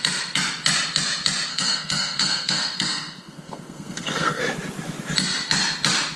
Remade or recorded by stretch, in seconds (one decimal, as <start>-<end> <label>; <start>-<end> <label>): 0.0-1.5 recorded; 1.5-4.4 remade; 4.4-6.2 recorded